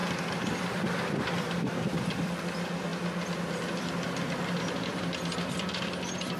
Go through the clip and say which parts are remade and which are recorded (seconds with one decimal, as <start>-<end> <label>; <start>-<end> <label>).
0.0-2.3 remade; 2.3-6.4 recorded